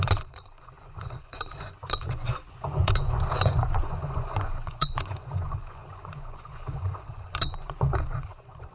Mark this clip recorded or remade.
remade